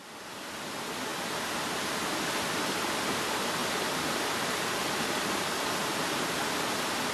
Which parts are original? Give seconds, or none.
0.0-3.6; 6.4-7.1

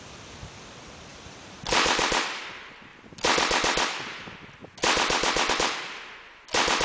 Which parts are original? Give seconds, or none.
0.0-1.1; 2.4-2.9; 5.5-6.8